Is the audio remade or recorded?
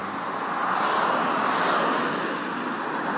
recorded